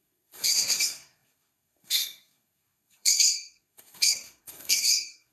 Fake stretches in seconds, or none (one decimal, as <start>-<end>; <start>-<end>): 0.0-5.3